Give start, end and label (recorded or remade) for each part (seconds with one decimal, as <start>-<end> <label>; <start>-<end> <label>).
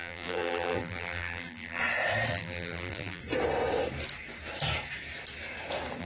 0.0-1.8 remade; 1.8-2.3 recorded; 2.3-3.2 remade; 3.2-6.0 recorded